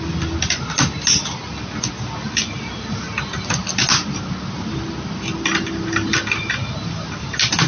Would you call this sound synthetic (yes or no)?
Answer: no